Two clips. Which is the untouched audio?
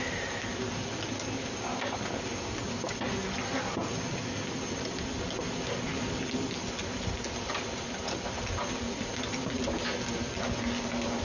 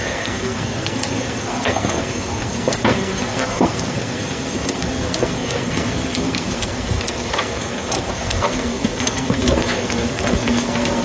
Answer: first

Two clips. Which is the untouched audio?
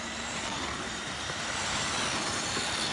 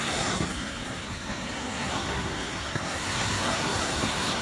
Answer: first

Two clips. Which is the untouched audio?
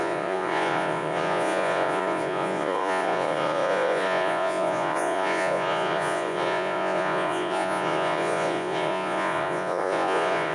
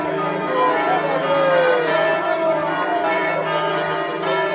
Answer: second